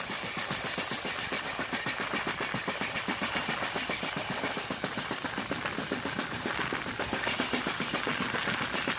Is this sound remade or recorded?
recorded